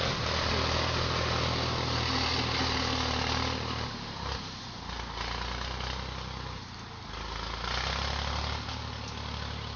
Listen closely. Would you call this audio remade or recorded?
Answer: recorded